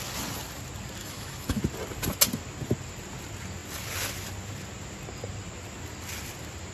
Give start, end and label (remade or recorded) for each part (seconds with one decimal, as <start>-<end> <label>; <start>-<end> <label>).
0.0-1.0 recorded; 1.0-1.6 remade; 1.6-6.7 recorded